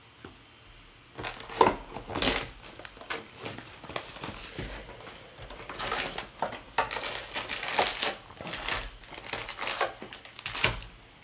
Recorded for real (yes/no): yes